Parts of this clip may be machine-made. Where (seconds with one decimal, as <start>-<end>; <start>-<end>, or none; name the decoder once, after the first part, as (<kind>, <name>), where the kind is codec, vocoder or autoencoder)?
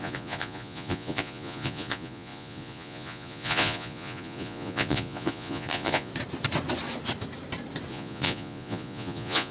0.0-6.1 (vocoder, Vocos); 7.9-9.5